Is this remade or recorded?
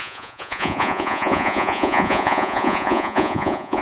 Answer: remade